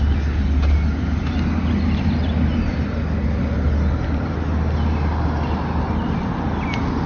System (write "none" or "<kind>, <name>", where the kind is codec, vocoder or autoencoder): none